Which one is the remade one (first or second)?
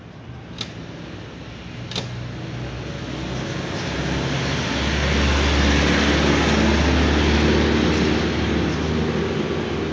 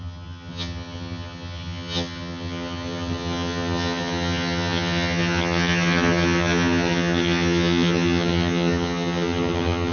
second